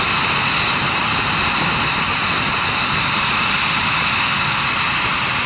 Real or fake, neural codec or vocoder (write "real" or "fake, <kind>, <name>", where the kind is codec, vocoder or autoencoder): real